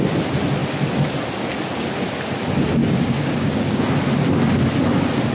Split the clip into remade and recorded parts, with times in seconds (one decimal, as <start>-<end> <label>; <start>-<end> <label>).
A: 0.0-2.8 recorded; 2.8-3.8 remade; 3.8-5.3 recorded